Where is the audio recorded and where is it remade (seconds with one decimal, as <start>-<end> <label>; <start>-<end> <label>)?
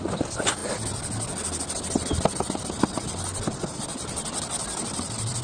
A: 0.0-0.6 remade; 0.6-3.8 recorded; 3.8-5.4 remade